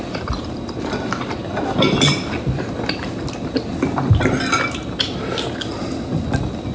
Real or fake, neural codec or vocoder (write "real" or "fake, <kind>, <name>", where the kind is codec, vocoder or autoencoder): real